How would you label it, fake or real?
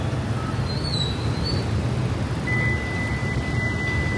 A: real